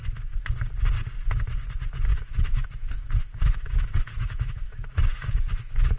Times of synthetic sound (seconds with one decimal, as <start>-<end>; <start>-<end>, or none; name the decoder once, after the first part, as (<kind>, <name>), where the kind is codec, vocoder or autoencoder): 2.1-6.0 (autoencoder, DAC-VAE)